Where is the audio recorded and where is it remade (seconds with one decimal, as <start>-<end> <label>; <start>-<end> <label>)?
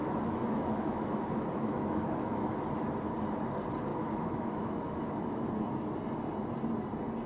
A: 0.0-2.4 remade; 2.4-3.9 recorded; 3.9-5.5 remade; 5.5-7.3 recorded